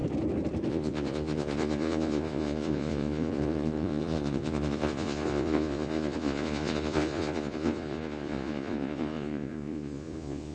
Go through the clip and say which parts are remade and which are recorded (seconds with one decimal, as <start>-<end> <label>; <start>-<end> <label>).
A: 0.0-0.7 recorded; 0.7-10.5 remade